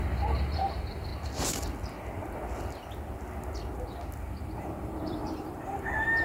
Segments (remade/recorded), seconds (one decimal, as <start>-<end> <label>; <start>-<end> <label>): 0.0-1.1 remade; 1.1-4.8 recorded; 4.8-6.2 remade